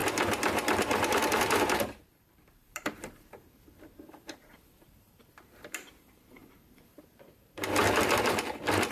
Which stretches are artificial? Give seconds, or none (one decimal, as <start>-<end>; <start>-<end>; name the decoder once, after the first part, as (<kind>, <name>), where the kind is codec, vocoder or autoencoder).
0.8-7.8 (vocoder, BigVGAN v2)